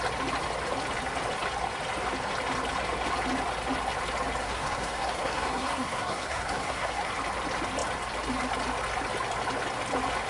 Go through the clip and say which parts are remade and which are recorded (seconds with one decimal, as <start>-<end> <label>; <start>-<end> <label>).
0.0-4.4 recorded; 4.4-7.1 remade; 7.1-10.3 recorded